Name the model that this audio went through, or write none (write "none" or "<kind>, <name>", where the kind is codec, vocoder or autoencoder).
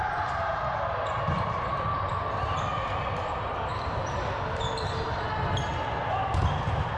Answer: none